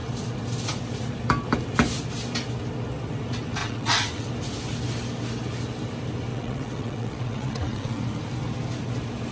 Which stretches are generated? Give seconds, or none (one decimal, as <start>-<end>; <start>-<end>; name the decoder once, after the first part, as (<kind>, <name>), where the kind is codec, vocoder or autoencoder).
3.6-4.3 (vocoder, WaveNeXt); 6.3-8.0